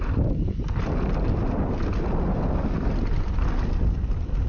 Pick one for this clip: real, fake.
real